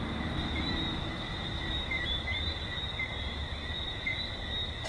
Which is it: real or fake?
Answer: real